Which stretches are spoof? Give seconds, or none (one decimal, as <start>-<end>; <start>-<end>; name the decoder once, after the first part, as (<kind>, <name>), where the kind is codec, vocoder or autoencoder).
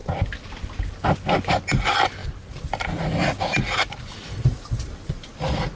none